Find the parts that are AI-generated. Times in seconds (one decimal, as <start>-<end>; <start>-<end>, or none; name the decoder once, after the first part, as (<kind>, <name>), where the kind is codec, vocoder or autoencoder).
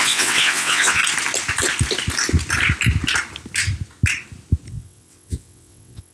0.0-1.0 (vocoder, WaveNeXt); 4.7-6.1